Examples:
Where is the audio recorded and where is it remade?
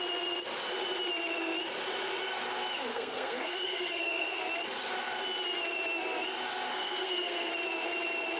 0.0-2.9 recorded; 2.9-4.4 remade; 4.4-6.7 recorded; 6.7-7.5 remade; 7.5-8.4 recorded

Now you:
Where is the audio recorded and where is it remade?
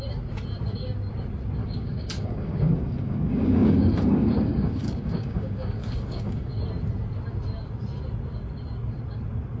0.0-1.6 recorded; 1.6-6.6 remade; 6.6-9.6 recorded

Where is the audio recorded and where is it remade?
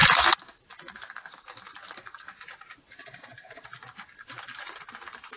0.0-5.4 recorded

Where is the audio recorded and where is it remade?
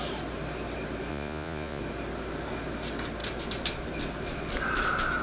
0.0-1.1 recorded; 1.1-1.8 remade; 1.8-5.2 recorded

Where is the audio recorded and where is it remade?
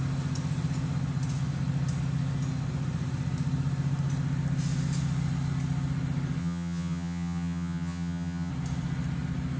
0.0-6.4 recorded; 6.4-8.5 remade; 8.5-9.6 recorded